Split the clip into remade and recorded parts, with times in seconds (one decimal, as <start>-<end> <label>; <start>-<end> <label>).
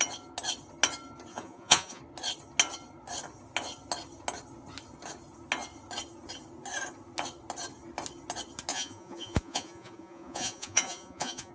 0.0-1.3 recorded; 1.3-2.0 remade; 2.0-8.7 recorded; 8.7-11.5 remade